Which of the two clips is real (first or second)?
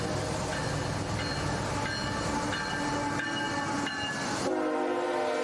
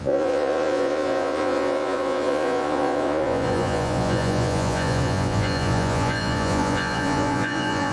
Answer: first